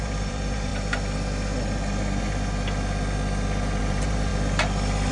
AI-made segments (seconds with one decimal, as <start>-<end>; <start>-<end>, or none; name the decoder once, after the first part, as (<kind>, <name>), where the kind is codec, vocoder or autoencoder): 0.0-0.7 (vocoder, BigVGAN v2); 3.8-4.3